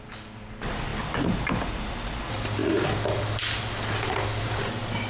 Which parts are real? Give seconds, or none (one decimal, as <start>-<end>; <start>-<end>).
0.0-5.1